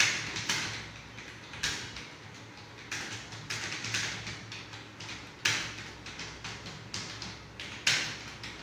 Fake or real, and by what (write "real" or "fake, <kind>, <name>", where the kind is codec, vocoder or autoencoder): real